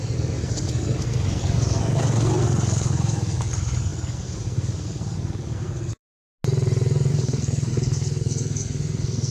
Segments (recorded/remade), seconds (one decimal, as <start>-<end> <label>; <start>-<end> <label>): 0.0-6.2 remade; 6.2-7.1 recorded; 7.1-9.3 remade